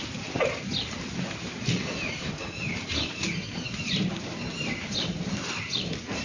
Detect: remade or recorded remade